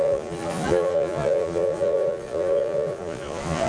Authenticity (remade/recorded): remade